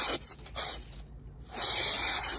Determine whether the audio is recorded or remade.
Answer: recorded